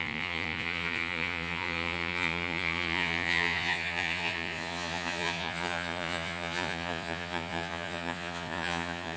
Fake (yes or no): yes